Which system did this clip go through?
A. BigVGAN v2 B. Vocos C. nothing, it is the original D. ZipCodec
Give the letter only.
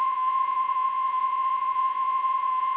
B